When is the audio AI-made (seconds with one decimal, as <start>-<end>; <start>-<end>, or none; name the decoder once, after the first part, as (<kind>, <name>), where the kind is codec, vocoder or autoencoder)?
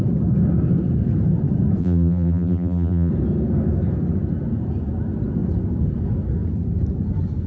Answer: 1.8-3.1 (vocoder, BigVGAN v2)